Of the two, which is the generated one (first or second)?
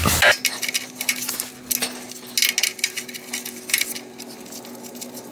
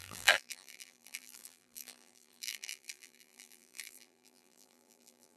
second